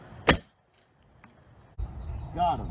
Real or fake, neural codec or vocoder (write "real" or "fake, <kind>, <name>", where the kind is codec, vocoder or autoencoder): real